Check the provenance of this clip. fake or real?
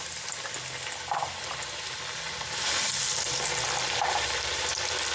real